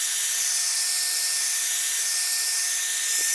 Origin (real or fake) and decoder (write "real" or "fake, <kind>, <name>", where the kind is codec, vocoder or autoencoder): real